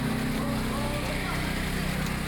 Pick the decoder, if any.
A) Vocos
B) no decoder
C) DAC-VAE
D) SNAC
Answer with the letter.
B